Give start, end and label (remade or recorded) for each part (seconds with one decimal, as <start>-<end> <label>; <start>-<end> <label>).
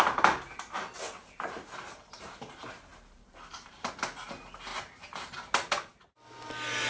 0.0-2.9 recorded; 2.9-3.9 remade; 3.9-4.7 recorded; 4.7-5.3 remade; 5.3-6.9 recorded